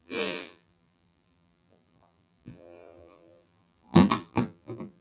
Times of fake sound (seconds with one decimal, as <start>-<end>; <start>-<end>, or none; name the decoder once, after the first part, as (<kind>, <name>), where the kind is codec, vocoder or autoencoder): 0.0-5.0 (vocoder, BigVGAN v2)